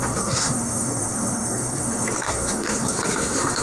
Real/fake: fake